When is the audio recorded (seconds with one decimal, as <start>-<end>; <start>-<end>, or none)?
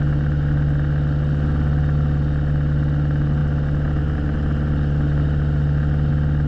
0.0-6.5